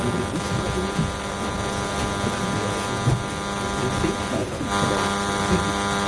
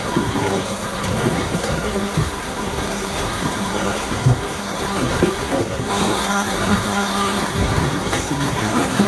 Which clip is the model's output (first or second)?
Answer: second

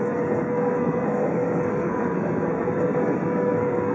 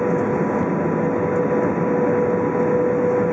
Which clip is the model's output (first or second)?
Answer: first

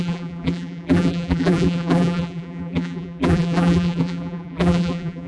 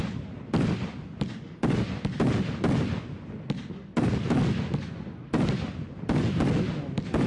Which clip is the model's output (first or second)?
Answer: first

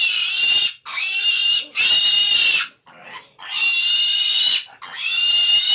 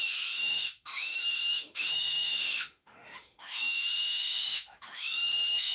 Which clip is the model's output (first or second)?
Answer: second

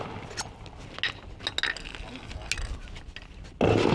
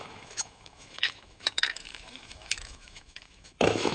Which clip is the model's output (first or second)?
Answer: second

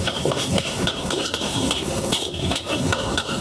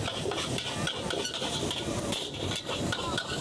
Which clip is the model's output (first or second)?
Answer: first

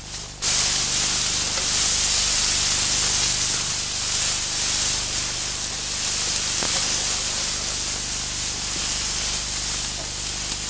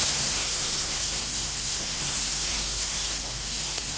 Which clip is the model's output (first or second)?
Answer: second